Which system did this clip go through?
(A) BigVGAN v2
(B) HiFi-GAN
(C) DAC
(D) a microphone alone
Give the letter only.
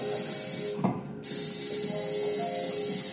D